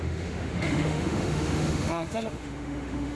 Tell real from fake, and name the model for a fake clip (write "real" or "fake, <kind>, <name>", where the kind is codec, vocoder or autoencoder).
fake, autoencoder, DAC-VAE